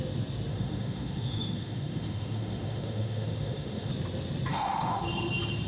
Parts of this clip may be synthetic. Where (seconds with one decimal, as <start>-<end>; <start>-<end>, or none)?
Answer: 0.5-3.9; 4.5-5.0